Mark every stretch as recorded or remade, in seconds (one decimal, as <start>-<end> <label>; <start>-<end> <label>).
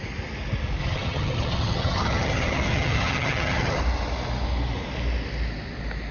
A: 0.0-0.8 recorded; 0.8-3.8 remade; 3.8-6.1 recorded